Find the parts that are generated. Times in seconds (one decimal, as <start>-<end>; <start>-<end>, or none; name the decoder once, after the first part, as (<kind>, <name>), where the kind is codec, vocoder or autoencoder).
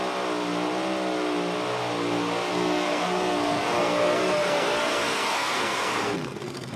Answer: 2.5-6.8 (codec, SNAC)